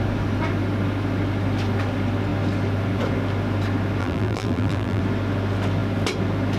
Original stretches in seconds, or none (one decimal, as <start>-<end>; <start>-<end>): 0.0-4.0; 5.0-6.6